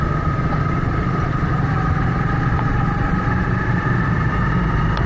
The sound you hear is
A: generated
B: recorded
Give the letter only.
B